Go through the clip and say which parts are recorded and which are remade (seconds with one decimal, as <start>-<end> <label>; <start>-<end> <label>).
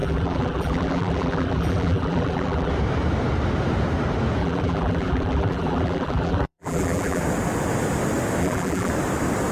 0.0-2.7 remade; 2.7-4.4 recorded; 4.4-7.2 remade; 7.2-8.4 recorded; 8.4-8.9 remade; 8.9-9.5 recorded